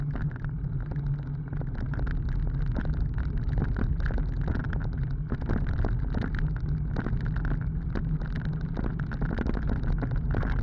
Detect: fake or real real